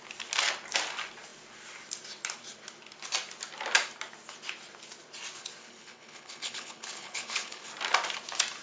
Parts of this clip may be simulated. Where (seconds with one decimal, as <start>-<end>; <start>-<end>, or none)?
5.6-7.7